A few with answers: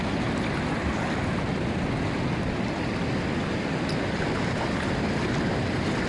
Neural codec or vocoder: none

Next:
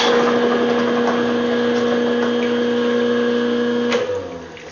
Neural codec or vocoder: none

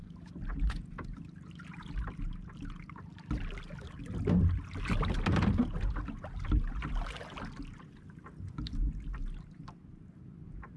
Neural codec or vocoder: none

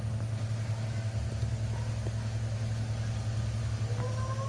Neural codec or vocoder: none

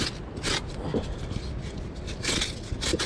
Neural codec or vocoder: none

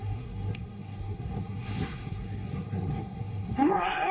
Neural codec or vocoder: codec, SNAC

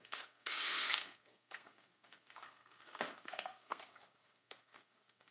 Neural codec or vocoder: codec, SNAC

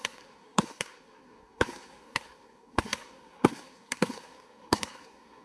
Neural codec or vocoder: codec, SNAC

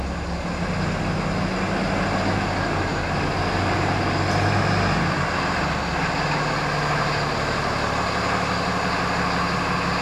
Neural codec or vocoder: none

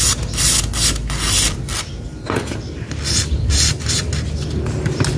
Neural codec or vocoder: none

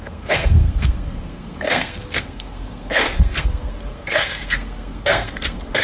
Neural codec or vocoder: codec, SNAC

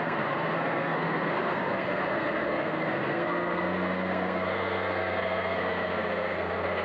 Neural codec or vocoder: codec, SNAC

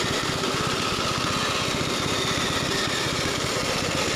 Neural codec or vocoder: none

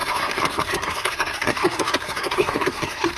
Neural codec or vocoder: codec, SNAC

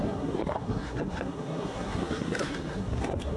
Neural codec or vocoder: codec, SNAC